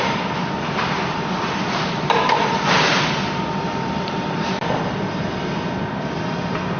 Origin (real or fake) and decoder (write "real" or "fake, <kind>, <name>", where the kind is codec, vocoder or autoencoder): fake, vocoder, BigVGAN v2